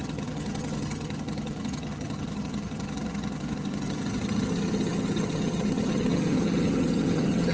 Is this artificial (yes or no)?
yes